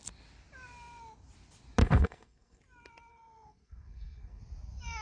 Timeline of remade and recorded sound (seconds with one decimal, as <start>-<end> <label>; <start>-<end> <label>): 0.0-1.8 recorded; 1.8-2.6 remade; 2.6-3.1 recorded; 3.1-4.4 remade; 4.4-5.0 recorded